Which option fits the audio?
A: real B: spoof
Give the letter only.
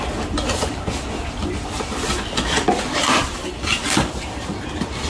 A